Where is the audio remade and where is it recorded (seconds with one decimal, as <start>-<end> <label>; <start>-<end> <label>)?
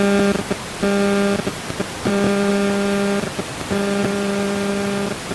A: 0.0-1.5 recorded; 1.5-2.5 remade; 2.5-4.0 recorded; 4.0-4.7 remade; 4.7-5.3 recorded